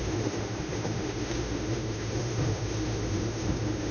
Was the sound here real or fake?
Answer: fake